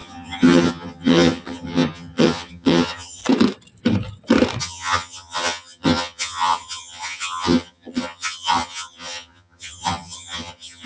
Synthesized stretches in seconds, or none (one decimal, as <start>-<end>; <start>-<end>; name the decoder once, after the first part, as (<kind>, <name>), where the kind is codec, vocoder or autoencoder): 0.0-3.2 (vocoder, HiFi-GAN); 4.6-10.9